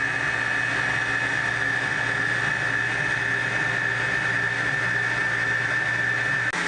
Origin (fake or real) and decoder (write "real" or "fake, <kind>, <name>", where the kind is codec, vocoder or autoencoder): real